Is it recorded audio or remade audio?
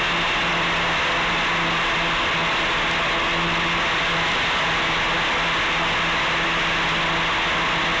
recorded